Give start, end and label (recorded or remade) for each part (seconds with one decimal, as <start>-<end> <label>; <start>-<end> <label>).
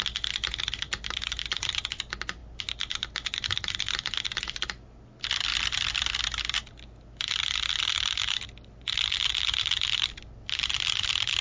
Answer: 0.0-11.4 recorded